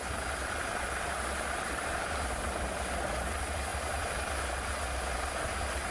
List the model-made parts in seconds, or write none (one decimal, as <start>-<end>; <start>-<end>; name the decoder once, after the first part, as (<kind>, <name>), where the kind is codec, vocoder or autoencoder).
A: none